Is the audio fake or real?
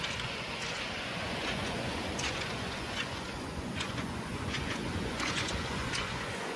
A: fake